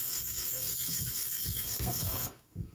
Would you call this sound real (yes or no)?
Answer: no